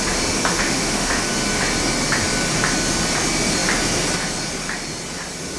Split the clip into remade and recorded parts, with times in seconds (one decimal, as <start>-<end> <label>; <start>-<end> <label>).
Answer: 0.0-0.5 recorded; 0.5-1.2 remade; 1.2-5.6 recorded